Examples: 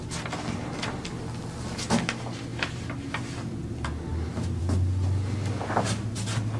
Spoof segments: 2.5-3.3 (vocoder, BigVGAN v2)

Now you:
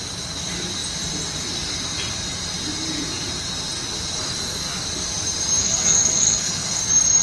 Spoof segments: 5.6-6.8 (codec, SNAC)

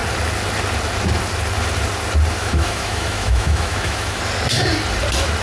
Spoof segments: 2.4-4.2 (autoencoder, DAC-VAE)

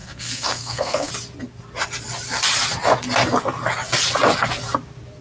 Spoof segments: 0.0-1.1 (codec, SNAC)

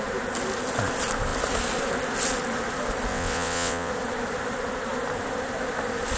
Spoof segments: 3.1-3.9 (vocoder, WaveNeXt)

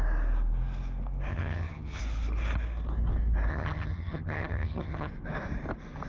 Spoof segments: 1.3-2.0 (vocoder, HiFi-GAN); 3.5-5.1

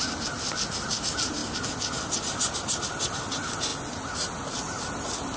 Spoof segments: none